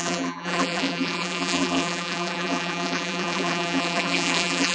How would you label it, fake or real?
fake